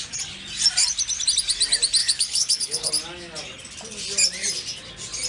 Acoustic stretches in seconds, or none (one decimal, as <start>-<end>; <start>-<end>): 0.0-2.0; 2.9-5.3